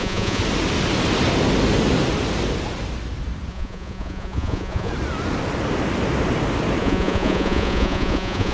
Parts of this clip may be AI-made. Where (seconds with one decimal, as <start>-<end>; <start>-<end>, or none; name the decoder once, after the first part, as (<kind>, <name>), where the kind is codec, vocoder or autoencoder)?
0.0-0.4 (vocoder, Vocos); 3.5-4.9; 6.8-8.5